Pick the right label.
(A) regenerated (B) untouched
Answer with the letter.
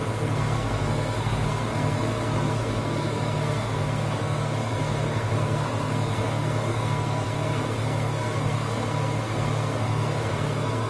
A